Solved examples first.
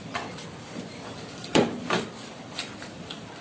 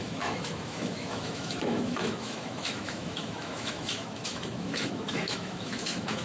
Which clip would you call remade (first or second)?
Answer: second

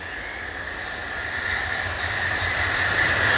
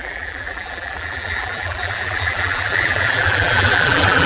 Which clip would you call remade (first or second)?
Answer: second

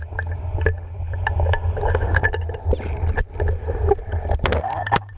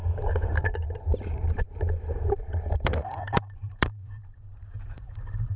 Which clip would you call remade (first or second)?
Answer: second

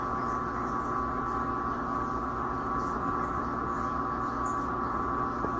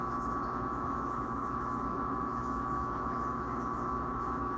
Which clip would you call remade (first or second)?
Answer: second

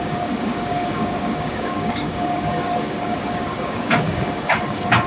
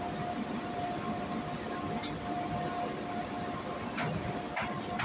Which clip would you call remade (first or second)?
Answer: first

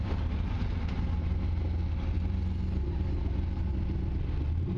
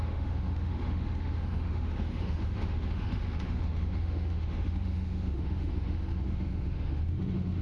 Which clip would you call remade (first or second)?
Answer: second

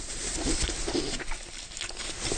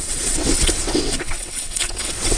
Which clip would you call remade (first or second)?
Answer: second